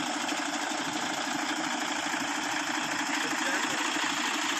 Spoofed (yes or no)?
no